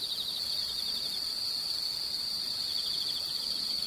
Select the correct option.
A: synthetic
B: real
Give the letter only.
B